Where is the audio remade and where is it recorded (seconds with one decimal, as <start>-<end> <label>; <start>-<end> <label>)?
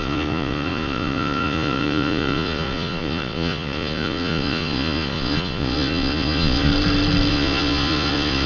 0.0-6.7 remade; 6.7-7.3 recorded; 7.3-8.5 remade